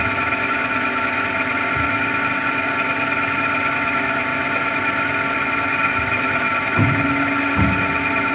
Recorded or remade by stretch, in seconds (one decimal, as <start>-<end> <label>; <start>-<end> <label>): 0.0-8.3 recorded